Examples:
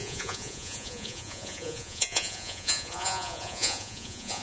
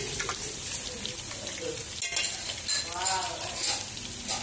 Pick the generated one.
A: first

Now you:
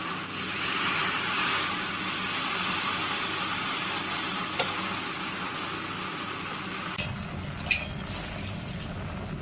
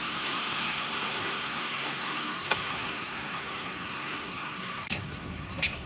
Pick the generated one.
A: second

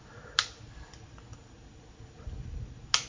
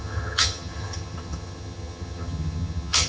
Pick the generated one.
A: second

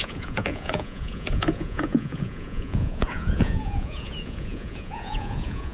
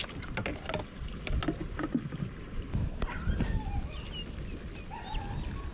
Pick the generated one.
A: first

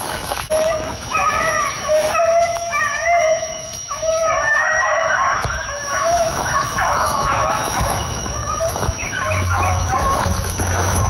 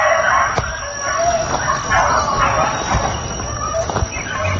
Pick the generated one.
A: first